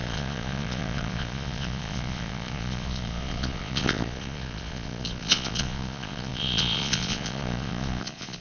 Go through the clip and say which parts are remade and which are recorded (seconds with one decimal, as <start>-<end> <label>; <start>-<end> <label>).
0.0-8.4 remade